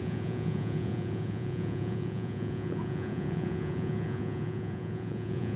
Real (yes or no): no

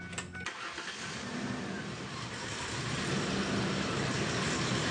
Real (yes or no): yes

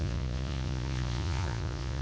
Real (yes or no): no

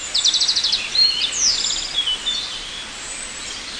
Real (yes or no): yes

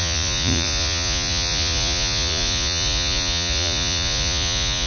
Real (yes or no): no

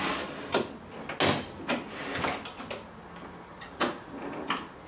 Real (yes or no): yes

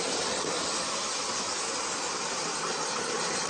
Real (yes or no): yes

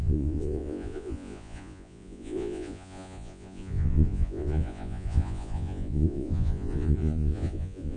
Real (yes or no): no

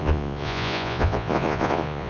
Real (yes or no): no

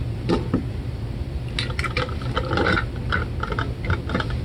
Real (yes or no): yes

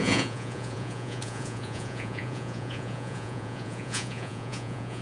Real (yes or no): no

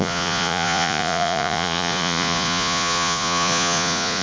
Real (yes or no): no